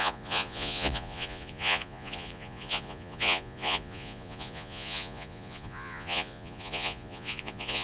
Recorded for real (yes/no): no